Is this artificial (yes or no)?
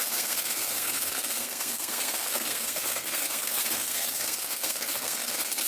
yes